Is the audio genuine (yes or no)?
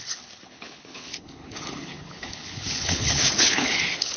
no